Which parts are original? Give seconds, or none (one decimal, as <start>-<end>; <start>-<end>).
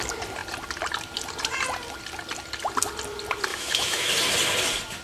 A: 0.0-3.5; 4.1-5.0